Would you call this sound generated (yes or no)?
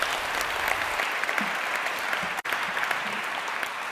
no